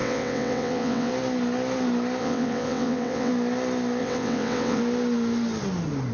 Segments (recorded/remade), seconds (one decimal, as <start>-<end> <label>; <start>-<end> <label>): 0.0-1.1 remade; 1.1-2.2 recorded; 2.2-3.3 remade; 3.3-4.0 recorded; 4.0-4.8 remade; 4.8-6.1 recorded